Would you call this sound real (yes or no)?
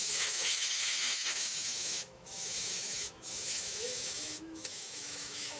no